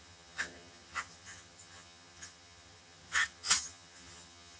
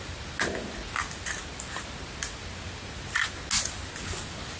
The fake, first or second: first